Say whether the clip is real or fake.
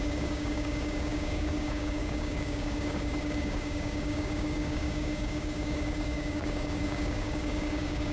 fake